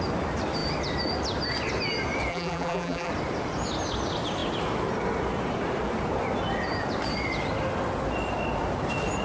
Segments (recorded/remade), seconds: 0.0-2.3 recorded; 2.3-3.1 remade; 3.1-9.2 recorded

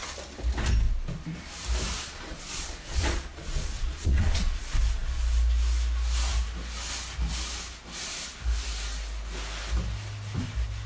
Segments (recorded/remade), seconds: 0.0-2.0 recorded; 2.0-4.6 remade; 4.6-10.9 recorded

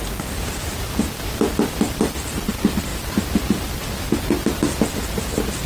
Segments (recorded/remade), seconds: 0.0-5.7 recorded

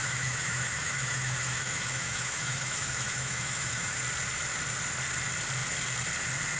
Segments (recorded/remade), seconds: 0.0-4.0 remade; 4.0-6.6 recorded

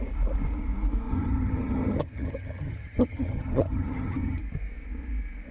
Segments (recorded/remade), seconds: 0.0-1.1 recorded; 1.1-4.4 remade; 4.4-5.5 recorded

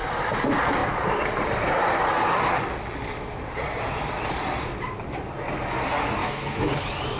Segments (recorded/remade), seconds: 0.0-6.2 recorded; 6.2-6.7 remade; 6.7-7.2 recorded

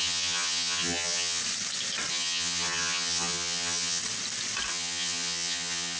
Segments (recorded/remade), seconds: 0.0-1.4 remade; 1.4-2.1 recorded; 2.1-4.0 remade; 4.0-4.7 recorded; 4.7-6.0 remade

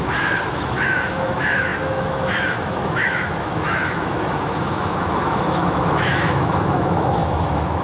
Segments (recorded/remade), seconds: 0.0-7.8 remade